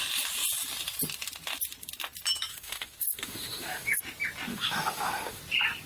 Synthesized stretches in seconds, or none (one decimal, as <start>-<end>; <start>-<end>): 2.5-4.0; 4.5-5.4